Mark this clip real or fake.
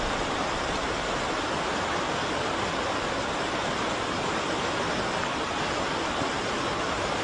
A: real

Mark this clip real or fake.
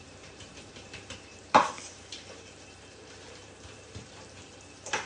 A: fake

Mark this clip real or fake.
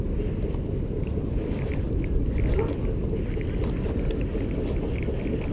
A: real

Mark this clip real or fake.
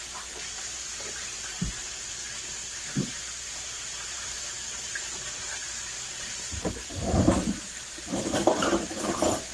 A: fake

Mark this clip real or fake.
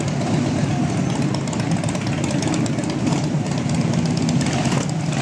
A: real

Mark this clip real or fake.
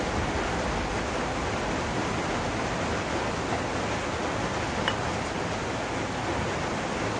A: real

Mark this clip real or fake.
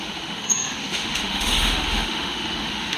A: fake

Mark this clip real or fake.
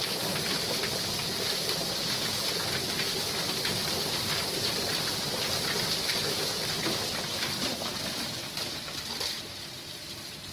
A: fake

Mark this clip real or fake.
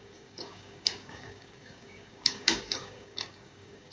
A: fake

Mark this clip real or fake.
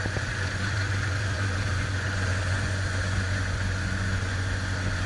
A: fake